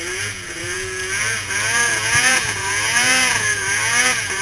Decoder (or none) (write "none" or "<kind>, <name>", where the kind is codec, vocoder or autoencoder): vocoder, Vocos